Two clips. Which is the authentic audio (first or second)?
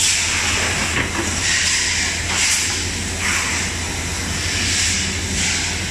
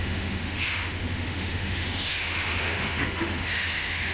first